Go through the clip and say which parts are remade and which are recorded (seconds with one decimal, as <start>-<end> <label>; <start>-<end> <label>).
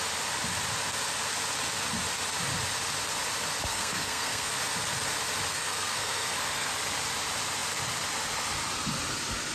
0.0-3.7 recorded; 3.7-4.5 remade; 4.5-5.5 recorded; 5.5-6.7 remade; 6.7-9.5 recorded